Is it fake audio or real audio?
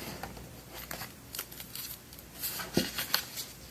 real